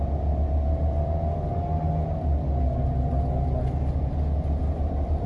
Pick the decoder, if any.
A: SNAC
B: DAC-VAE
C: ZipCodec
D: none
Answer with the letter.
D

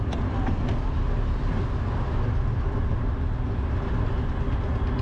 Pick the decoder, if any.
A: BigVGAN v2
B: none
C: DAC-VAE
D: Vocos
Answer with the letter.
B